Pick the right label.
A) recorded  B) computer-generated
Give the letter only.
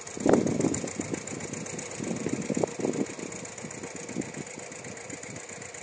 A